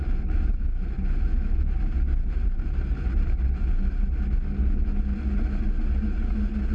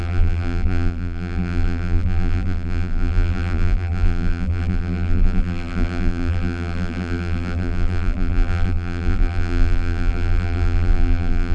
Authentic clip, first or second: first